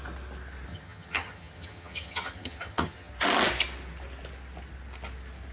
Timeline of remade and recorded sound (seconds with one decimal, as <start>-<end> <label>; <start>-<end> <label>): 0.0-0.7 recorded; 0.7-3.1 remade; 3.1-5.5 recorded